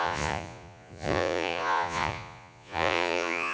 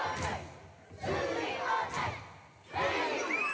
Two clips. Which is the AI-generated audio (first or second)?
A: first